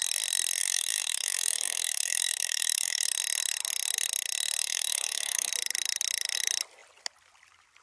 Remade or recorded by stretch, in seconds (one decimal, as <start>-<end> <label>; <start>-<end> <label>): 0.0-0.6 recorded; 0.6-3.1 remade; 3.1-4.6 recorded; 4.6-5.5 remade; 5.5-7.8 recorded